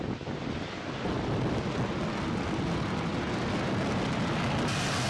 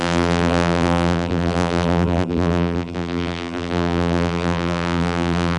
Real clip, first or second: first